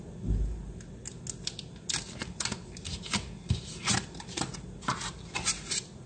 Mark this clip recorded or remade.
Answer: recorded